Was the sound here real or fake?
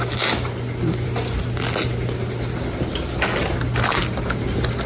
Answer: real